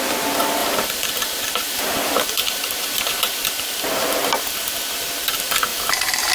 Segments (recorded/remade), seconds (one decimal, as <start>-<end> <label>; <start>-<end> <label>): 0.0-0.6 recorded; 0.6-3.5 remade; 3.5-5.7 recorded; 5.7-6.3 remade